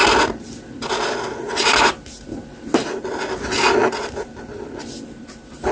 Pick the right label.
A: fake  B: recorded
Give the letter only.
B